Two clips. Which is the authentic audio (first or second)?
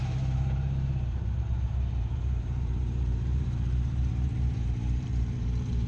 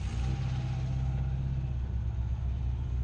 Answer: second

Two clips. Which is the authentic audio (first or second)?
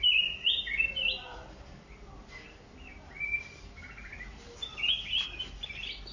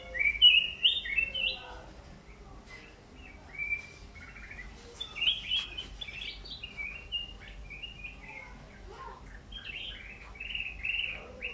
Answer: second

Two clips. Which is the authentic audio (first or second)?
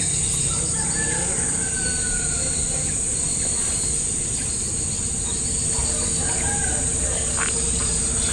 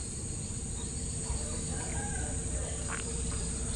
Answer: first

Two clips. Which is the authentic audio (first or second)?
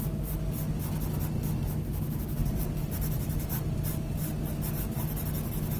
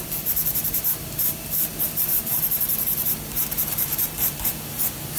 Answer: first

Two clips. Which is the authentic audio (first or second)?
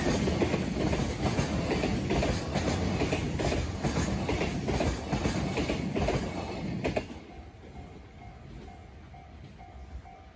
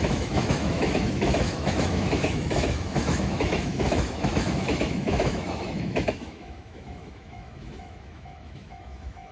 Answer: first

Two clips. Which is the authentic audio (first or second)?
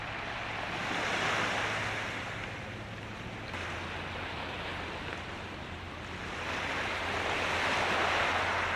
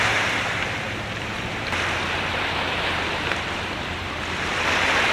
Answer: first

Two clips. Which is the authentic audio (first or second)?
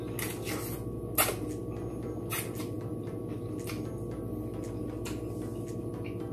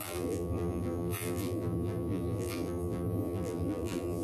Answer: first